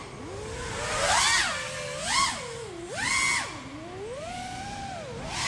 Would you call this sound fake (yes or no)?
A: no